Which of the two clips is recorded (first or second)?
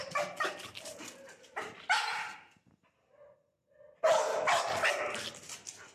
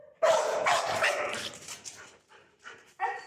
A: first